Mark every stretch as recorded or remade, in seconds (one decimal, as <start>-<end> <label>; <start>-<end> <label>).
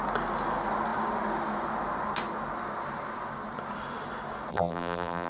0.0-4.5 recorded; 4.5-5.3 remade